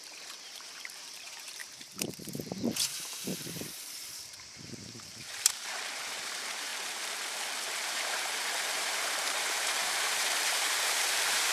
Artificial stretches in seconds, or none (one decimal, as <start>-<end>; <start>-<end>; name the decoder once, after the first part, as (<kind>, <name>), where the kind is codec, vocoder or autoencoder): 0.0-6.7 (vocoder, BigVGAN v2); 7.7-11.5